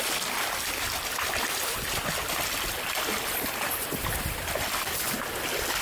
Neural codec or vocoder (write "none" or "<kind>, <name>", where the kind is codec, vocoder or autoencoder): none